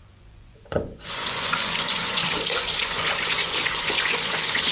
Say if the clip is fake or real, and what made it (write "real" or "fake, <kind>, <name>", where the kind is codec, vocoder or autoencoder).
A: fake, vocoder, Vocos